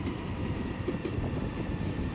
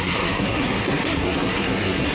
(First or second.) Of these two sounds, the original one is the first